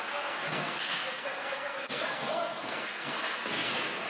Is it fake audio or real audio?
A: fake